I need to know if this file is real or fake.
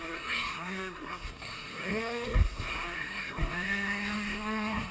fake